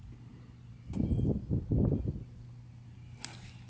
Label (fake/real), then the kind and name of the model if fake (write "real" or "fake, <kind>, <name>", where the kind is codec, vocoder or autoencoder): real